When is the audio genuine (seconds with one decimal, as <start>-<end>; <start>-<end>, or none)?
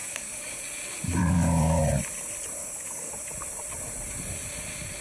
0.6-1.2; 1.8-2.6; 3.1-5.0